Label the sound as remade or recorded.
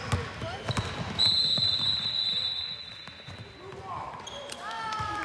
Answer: recorded